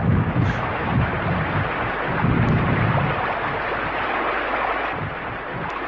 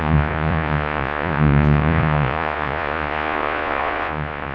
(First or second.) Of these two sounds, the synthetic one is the second